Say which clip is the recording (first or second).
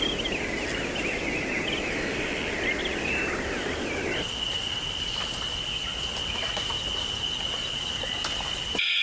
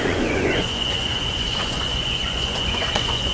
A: first